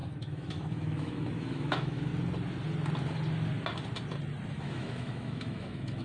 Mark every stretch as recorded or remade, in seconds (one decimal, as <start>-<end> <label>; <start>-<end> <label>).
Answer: 0.0-2.1 remade; 2.1-4.6 recorded; 4.6-6.0 remade

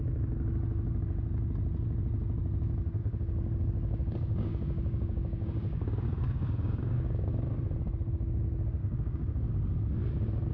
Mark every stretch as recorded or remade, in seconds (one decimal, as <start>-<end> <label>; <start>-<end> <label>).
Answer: 0.0-3.0 recorded; 3.0-7.3 remade; 7.3-8.8 recorded; 8.8-9.5 remade; 9.5-10.5 recorded